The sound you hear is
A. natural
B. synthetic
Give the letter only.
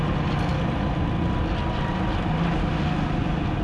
A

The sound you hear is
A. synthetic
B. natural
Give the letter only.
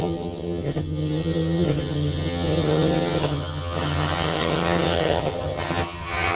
A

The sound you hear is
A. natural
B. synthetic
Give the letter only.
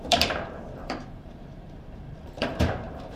B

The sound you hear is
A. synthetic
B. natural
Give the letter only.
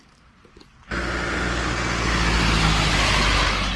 B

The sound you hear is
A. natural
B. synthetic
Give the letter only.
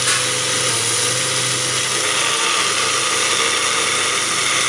A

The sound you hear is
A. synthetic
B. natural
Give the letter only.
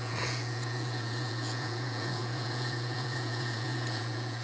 A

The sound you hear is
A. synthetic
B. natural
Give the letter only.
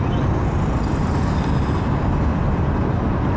B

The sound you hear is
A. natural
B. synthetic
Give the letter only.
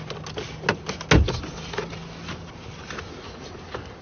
A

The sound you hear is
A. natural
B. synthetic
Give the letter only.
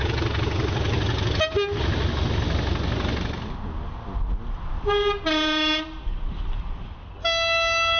A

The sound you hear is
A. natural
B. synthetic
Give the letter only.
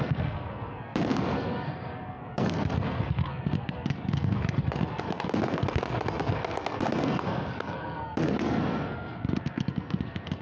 B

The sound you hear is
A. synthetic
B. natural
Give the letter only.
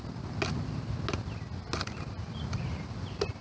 B